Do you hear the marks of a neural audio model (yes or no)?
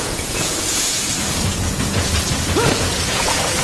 yes